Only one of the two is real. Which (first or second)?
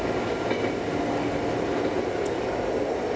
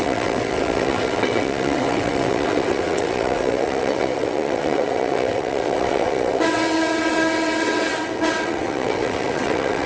first